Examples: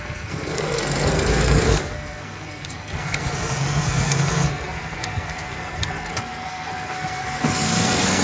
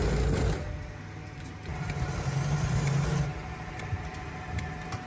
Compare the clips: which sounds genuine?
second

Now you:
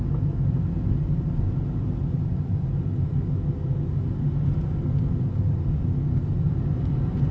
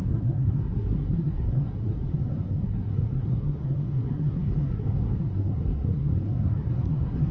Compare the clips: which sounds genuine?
first